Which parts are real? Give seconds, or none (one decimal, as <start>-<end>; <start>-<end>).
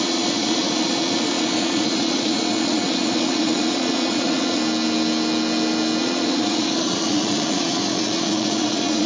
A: 4.6-6.0